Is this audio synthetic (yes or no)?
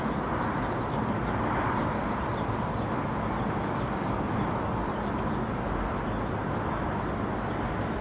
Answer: no